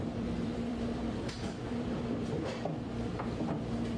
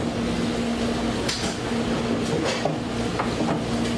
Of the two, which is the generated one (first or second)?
first